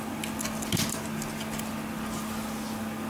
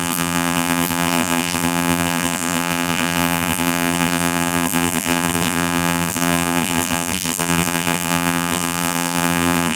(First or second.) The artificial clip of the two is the second